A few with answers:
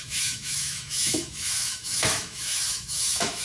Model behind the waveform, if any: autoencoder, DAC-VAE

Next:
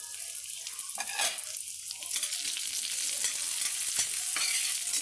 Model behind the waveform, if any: none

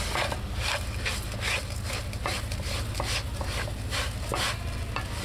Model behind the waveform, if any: none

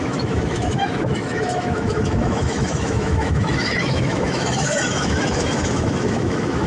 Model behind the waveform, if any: autoencoder, DAC-VAE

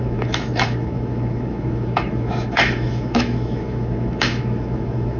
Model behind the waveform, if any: autoencoder, DAC-VAE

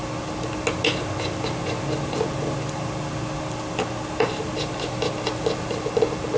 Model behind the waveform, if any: none